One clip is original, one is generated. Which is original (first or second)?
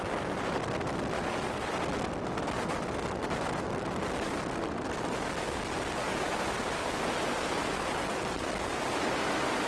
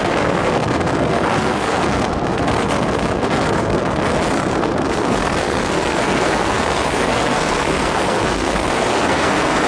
first